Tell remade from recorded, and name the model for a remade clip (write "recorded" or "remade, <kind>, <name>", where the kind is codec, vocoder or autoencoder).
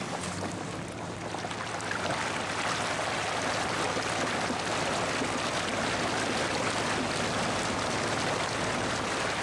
recorded